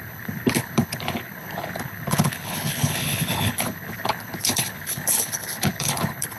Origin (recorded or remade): remade